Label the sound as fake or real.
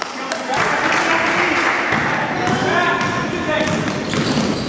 real